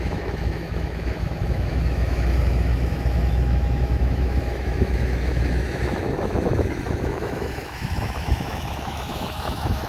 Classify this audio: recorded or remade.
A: remade